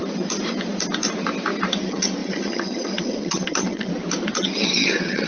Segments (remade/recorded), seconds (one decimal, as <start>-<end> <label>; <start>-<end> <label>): 0.0-1.8 recorded; 1.8-3.9 remade; 3.9-4.4 recorded; 4.4-5.3 remade